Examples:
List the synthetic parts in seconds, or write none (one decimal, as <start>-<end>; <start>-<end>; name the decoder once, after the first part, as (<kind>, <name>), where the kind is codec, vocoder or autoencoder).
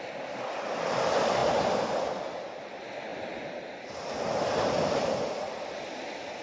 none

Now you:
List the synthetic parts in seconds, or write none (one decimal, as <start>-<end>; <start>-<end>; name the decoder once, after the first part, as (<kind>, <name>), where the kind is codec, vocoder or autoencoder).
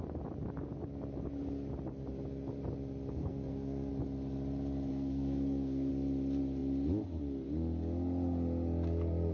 3.2-3.9 (codec, SNAC); 4.9-5.9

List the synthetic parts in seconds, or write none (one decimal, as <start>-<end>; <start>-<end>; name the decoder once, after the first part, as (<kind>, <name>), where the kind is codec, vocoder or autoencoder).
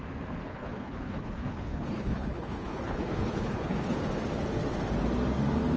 0.5-4.0 (codec, HILCodec)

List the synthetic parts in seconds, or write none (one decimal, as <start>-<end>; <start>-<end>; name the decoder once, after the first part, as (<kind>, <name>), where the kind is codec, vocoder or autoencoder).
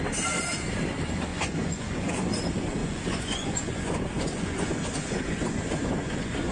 1.3-2.1 (vocoder, Vocos); 2.8-6.5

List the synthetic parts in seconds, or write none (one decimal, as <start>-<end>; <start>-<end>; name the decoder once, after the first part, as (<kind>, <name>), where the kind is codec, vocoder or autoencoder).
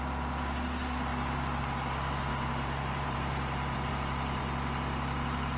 2.3-3.9 (vocoder, BigVGAN v2)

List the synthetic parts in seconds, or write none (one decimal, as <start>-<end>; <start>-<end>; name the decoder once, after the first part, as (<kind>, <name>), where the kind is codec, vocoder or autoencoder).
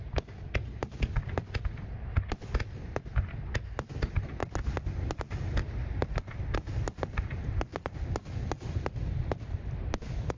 none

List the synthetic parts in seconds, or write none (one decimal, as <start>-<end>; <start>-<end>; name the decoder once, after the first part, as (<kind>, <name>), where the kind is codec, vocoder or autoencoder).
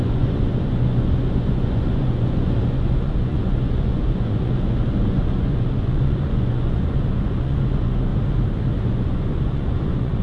0.0-8.1 (vocoder, Vocos); 8.8-10.2